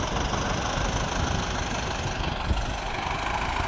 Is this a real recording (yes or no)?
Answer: yes